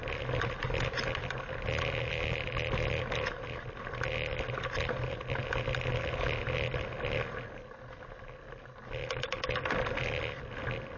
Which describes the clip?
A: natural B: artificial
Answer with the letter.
A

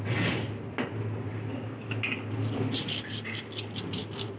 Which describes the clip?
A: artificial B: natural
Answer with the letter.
B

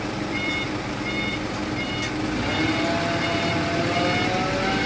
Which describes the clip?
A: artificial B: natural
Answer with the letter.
B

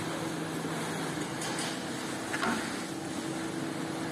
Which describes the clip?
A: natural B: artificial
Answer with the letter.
A